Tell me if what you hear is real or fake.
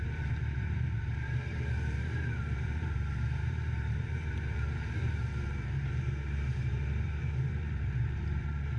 fake